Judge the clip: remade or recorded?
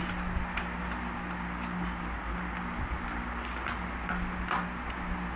recorded